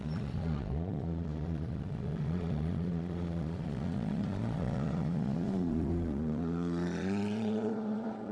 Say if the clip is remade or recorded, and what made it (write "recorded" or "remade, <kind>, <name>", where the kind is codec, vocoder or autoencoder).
remade, vocoder, Vocos